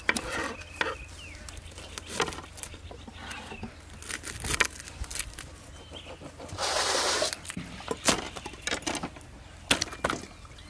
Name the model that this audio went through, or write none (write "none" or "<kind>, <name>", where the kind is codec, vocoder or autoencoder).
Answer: none